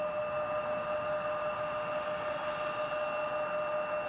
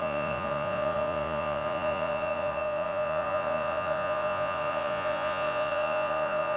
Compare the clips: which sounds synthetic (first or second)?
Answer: second